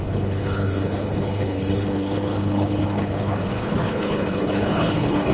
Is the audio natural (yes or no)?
no